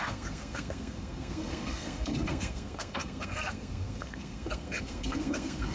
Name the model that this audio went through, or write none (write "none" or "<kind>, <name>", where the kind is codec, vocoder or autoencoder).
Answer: codec, SNAC